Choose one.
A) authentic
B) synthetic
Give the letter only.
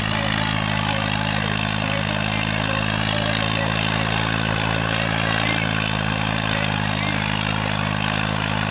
A